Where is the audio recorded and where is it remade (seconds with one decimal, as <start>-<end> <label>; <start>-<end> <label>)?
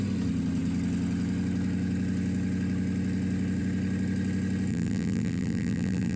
0.0-4.7 recorded; 4.7-6.2 remade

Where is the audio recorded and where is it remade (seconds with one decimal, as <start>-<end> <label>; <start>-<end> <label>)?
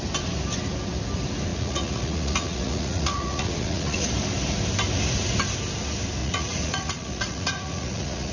0.0-1.5 recorded; 1.5-4.1 remade; 4.1-6.2 recorded; 6.2-8.3 remade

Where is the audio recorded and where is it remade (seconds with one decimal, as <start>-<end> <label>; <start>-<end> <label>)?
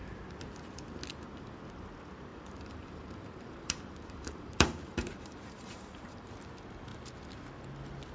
0.0-2.3 recorded; 2.3-6.3 remade; 6.3-8.1 recorded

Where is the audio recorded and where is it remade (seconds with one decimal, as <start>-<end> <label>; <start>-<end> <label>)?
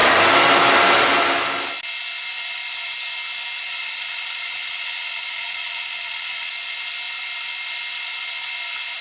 0.0-3.7 recorded; 3.7-6.5 remade; 6.5-9.0 recorded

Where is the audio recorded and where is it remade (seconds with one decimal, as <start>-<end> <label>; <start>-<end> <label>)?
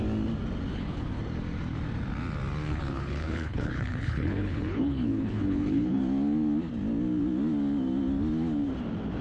0.0-0.7 recorded; 0.7-1.2 remade; 1.2-2.7 recorded; 2.7-6.0 remade; 6.0-9.2 recorded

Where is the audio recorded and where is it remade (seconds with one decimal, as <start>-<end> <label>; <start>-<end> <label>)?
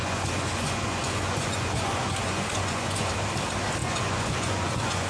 0.0-3.1 remade; 3.1-3.8 recorded; 3.8-5.1 remade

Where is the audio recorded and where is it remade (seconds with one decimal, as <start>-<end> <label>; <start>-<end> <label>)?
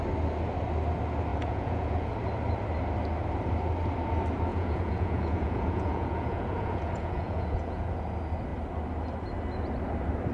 0.0-1.3 recorded; 1.3-2.1 remade; 2.1-4.5 recorded; 4.5-7.9 remade; 7.9-10.3 recorded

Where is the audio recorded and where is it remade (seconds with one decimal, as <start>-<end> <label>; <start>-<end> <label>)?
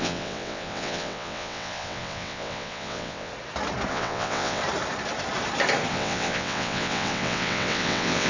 0.0-3.3 remade; 3.3-3.9 recorded; 3.9-4.6 remade; 4.6-5.9 recorded; 5.9-8.3 remade